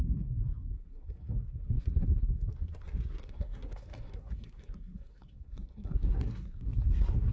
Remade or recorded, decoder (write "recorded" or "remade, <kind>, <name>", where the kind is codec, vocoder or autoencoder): remade, codec, SNAC